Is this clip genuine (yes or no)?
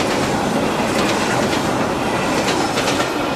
yes